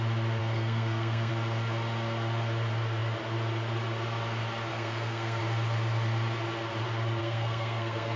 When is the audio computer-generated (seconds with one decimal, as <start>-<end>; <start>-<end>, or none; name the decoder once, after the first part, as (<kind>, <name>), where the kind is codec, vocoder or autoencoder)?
0.4-1.3 (codec, SNAC); 4.7-5.4; 7.2-8.2